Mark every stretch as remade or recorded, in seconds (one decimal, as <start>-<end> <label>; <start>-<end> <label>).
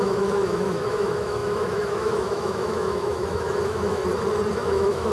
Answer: 0.0-4.0 remade; 4.0-4.5 recorded; 4.5-5.1 remade